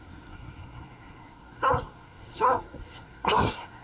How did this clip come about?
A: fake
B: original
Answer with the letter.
A